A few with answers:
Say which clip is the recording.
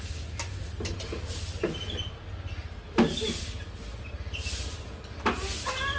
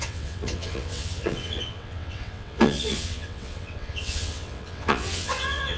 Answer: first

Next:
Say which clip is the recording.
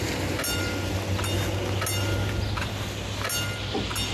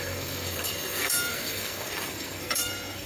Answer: first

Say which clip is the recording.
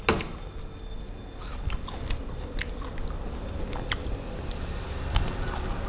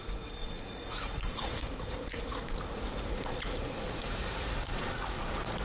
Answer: first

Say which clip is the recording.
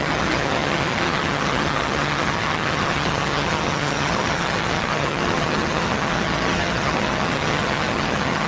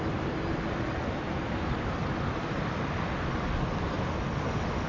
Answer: second